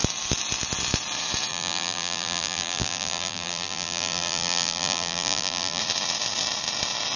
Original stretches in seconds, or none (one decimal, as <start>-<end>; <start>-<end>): 0.0-1.5; 5.8-7.2